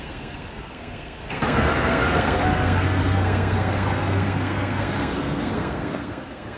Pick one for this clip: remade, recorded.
remade